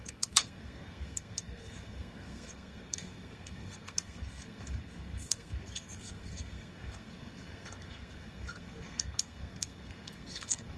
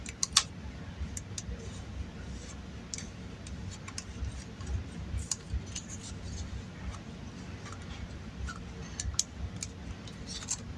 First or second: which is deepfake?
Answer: first